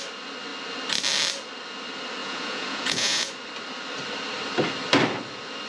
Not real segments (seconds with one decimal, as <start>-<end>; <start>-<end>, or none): 2.2-3.3